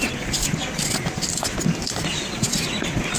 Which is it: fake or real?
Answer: real